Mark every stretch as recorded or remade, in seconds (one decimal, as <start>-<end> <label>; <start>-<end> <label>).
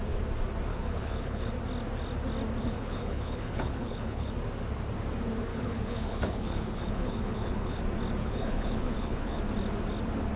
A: 0.0-0.7 recorded; 0.7-1.5 remade; 1.5-2.6 recorded; 2.6-4.3 remade; 4.3-5.5 recorded; 5.5-7.8 remade; 7.8-8.2 recorded; 8.2-9.4 remade; 9.4-10.4 recorded